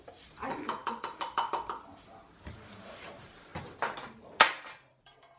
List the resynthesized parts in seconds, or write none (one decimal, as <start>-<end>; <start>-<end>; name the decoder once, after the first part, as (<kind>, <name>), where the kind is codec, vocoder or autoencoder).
0.0-3.5 (vocoder, BigVGAN v2); 4.9-5.4